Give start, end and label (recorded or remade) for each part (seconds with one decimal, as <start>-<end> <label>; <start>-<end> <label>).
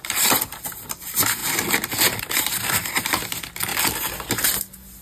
0.0-5.0 recorded